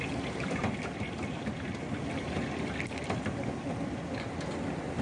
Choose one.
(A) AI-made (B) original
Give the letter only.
A